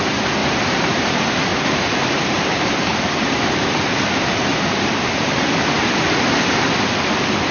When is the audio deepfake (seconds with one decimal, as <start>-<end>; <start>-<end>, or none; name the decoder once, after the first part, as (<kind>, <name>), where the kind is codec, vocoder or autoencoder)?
0.4-1.1 (vocoder, BigVGAN v2); 1.5-3.8; 4.5-5.3